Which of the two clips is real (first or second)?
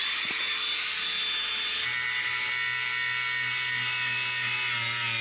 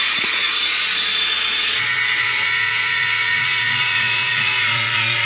first